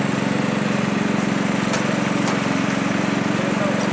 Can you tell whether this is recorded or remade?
recorded